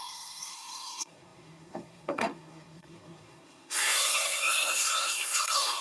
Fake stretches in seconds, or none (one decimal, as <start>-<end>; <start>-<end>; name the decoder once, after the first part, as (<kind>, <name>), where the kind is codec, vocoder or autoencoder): 0.0-5.8 (codec, SNAC)